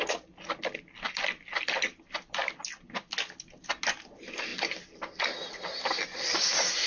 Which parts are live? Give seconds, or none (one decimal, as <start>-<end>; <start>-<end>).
0.0-6.9